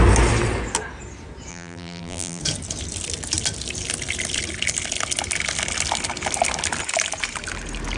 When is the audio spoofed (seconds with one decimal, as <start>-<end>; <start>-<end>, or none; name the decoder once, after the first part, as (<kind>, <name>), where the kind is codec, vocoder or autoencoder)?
1.5-2.4 (vocoder, BigVGAN v2)